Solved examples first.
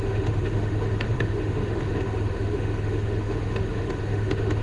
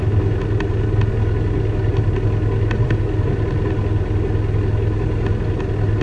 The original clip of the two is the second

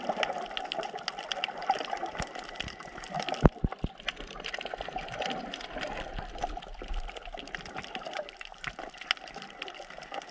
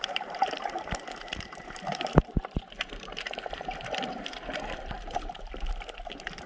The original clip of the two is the first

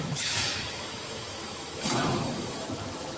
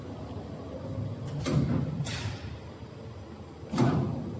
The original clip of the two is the second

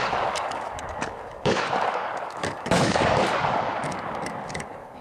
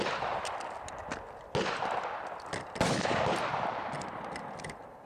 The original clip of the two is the second